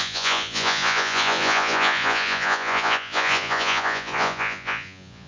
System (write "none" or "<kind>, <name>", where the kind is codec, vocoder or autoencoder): vocoder, Vocos